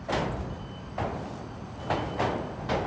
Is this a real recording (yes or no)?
yes